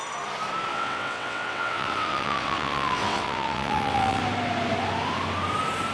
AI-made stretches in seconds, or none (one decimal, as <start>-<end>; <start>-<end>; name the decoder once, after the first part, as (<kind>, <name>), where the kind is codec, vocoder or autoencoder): 0.7-4.2 (vocoder, WaveNeXt)